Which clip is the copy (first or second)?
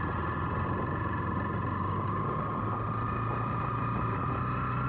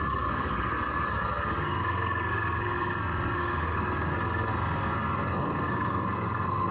second